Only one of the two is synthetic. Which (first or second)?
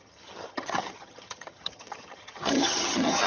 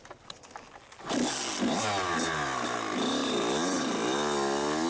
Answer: first